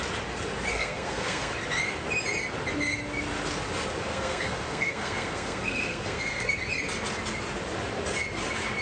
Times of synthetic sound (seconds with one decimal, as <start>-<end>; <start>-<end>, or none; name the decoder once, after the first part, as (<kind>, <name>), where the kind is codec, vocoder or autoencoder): 0.7-1.5 (codec, SNAC); 4.1-6.5